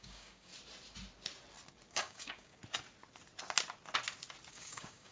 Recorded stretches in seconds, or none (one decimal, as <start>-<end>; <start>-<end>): 0.5-1.9; 2.6-4.5